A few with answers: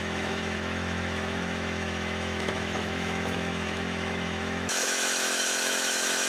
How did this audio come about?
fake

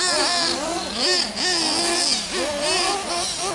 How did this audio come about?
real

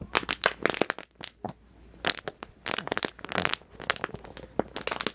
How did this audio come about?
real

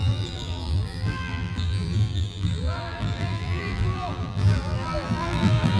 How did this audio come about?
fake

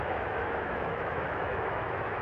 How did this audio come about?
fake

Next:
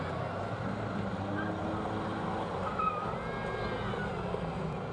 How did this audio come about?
real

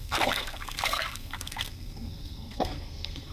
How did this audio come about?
fake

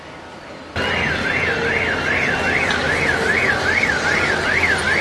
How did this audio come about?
real